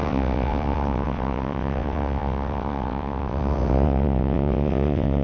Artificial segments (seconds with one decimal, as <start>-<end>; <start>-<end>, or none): 0.0-5.2